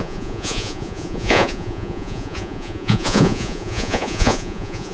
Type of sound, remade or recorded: remade